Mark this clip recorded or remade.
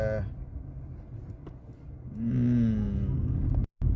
recorded